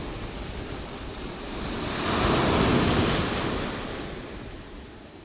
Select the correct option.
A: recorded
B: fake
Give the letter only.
A